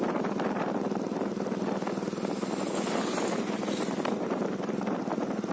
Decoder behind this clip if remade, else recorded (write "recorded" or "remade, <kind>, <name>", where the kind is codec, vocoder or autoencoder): recorded